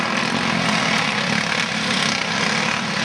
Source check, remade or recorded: recorded